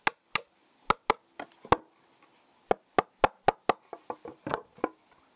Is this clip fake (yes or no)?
no